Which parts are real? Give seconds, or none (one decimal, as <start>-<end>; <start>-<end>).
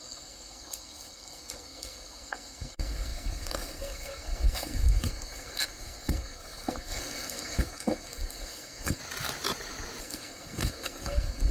9.0-10.0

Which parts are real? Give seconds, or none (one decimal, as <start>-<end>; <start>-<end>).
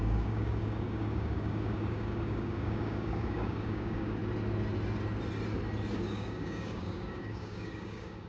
4.2-5.9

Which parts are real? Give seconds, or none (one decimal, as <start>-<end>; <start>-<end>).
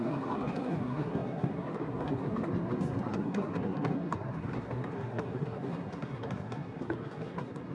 none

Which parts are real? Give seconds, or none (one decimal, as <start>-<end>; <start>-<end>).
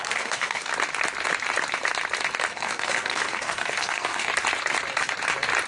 0.7-2.5; 4.3-5.7